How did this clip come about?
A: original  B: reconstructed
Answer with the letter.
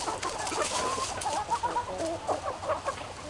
A